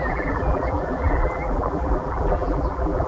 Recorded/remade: remade